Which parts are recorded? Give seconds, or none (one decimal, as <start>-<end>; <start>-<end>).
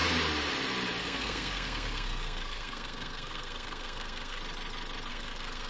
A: 0.0-1.0; 4.4-5.1